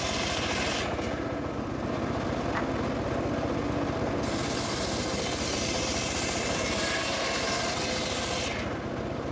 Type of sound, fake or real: real